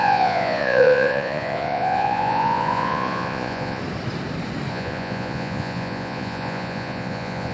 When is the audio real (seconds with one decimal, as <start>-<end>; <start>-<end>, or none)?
3.8-4.7